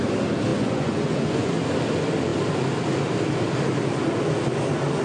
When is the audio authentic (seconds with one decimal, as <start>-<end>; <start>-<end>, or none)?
0.0-0.5; 1.5-5.0